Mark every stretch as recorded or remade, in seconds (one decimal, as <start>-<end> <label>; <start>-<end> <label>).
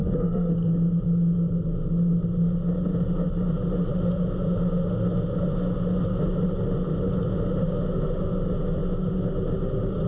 0.0-0.5 remade; 0.5-10.1 recorded